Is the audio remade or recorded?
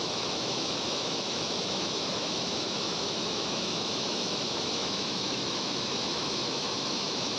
remade